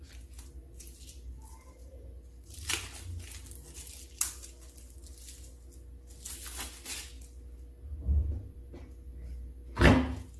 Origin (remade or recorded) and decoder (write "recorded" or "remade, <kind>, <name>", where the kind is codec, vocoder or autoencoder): recorded